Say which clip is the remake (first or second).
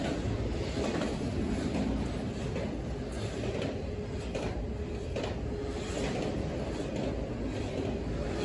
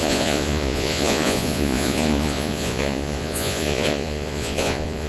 second